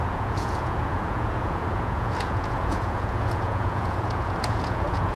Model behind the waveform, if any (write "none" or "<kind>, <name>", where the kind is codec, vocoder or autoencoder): vocoder, Vocos